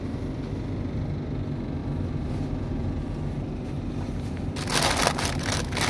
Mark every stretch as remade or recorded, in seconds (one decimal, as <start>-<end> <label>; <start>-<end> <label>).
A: 0.0-5.9 recorded